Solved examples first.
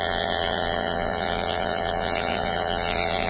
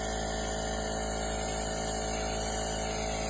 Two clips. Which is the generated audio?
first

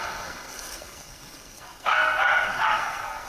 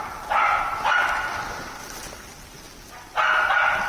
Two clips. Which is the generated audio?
first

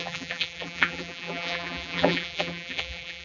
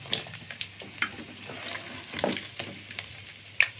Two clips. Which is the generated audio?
first